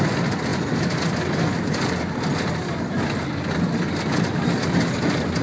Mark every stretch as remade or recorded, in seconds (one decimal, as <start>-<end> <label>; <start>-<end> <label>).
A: 0.0-5.4 recorded